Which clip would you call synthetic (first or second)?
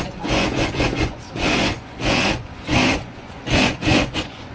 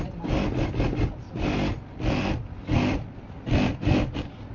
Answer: first